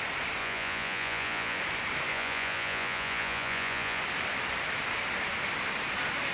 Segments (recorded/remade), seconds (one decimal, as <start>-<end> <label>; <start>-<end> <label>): 0.0-0.4 recorded; 0.4-1.6 remade; 1.6-2.1 recorded; 2.1-4.0 remade; 4.0-6.3 recorded